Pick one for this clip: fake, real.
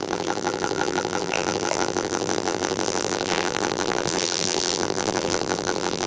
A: fake